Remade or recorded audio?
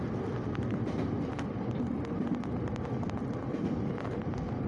recorded